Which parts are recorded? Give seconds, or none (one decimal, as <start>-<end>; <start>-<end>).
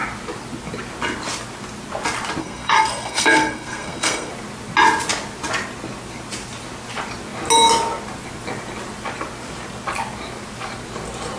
0.0-2.4; 4.3-11.4